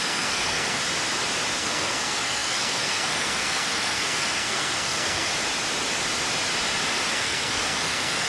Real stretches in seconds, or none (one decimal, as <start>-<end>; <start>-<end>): 0.8-1.6; 5.3-7.1